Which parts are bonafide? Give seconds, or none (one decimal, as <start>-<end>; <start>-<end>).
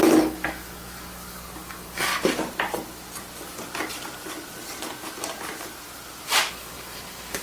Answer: 2.1-6.5